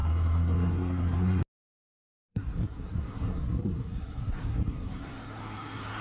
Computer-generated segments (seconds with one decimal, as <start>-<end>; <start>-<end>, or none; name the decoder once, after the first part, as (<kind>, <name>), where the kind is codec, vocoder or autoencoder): 0.0-1.4 (codec, SNAC); 2.3-6.0